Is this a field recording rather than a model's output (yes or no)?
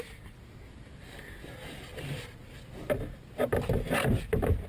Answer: yes